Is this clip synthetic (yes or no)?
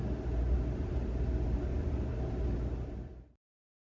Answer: no